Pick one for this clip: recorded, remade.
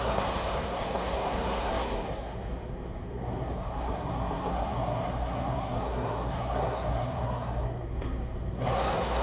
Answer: remade